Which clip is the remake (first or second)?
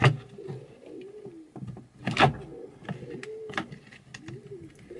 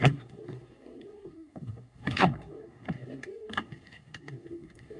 second